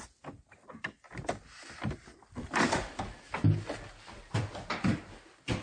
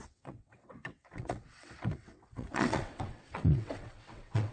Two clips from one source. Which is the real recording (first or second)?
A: first